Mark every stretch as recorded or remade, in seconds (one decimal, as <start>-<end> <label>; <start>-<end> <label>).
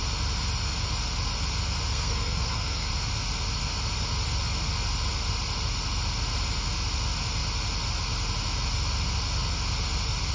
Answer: 0.0-1.9 recorded; 1.9-2.9 remade; 2.9-10.3 recorded